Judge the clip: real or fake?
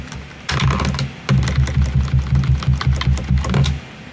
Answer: real